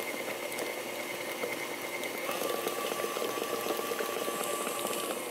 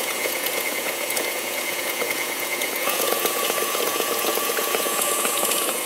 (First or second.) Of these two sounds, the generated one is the second